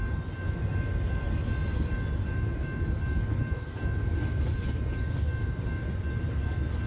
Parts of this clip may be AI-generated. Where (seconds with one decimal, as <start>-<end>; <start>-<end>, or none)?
none